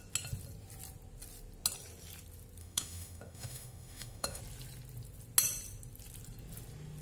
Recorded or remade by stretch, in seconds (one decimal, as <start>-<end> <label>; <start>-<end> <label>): 0.0-2.6 recorded; 2.6-4.4 remade; 4.4-7.0 recorded